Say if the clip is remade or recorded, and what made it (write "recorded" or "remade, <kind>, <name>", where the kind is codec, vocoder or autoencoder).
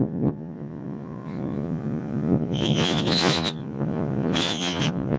remade, vocoder, Vocos